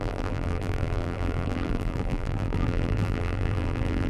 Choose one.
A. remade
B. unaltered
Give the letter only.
A